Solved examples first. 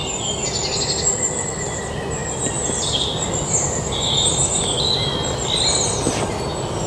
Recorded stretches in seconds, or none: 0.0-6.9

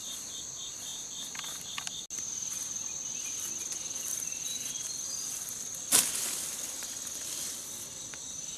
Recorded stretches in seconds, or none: 0.0-4.1; 6.9-8.6

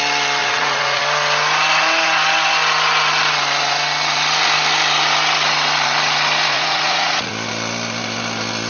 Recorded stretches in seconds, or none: 0.0-0.4; 1.0-6.5; 7.3-8.7

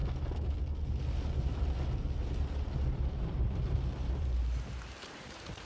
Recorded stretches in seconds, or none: 0.0-3.4

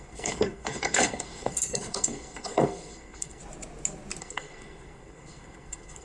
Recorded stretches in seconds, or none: 3.4-4.2

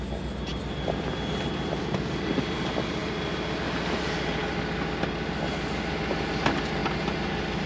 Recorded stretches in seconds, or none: 0.0-7.7

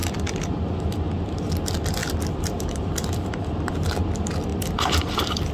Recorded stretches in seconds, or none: 0.0-2.0; 3.7-5.5

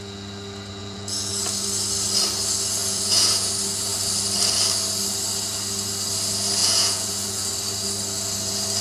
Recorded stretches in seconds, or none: 0.0-0.8; 1.3-2.8; 3.5-6.6; 7.5-8.8